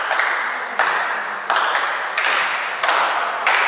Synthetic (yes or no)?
no